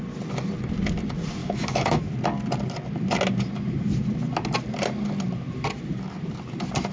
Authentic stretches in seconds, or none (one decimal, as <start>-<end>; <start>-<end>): 0.0-1.4; 2.0-6.9